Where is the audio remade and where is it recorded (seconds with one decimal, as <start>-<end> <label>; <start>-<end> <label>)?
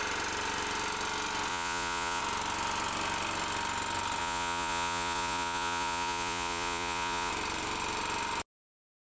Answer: 0.0-1.5 recorded; 1.5-2.2 remade; 2.2-4.2 recorded; 4.2-7.3 remade; 7.3-9.0 recorded